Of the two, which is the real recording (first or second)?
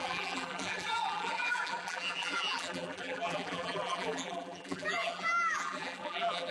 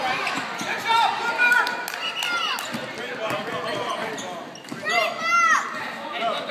second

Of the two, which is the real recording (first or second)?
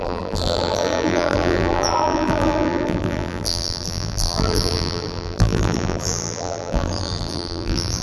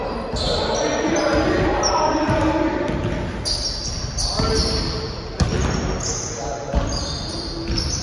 second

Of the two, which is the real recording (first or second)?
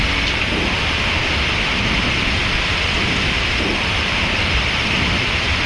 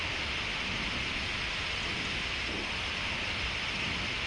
second